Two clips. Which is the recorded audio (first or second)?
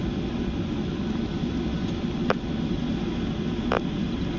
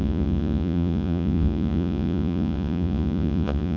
first